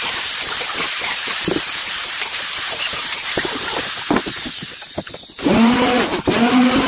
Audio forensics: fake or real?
fake